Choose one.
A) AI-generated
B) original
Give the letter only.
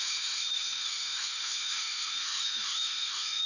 A